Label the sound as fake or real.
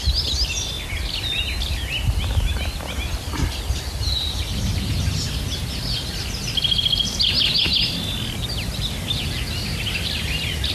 real